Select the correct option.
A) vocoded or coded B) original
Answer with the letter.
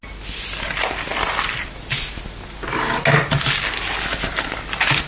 B